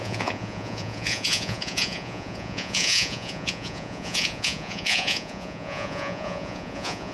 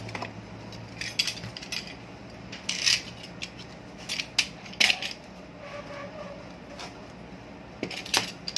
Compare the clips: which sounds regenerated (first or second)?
first